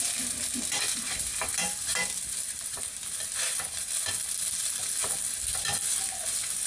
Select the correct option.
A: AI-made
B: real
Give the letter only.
A